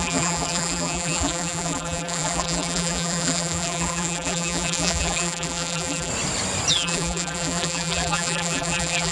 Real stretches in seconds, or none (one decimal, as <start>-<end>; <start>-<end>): 6.1-6.7